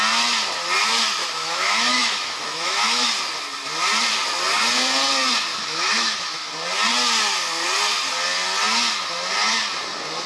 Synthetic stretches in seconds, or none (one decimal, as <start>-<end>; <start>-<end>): 1.2-3.1; 5.5-6.5